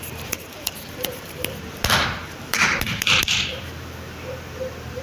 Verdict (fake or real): fake